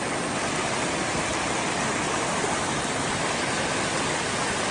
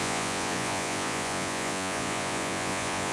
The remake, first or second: second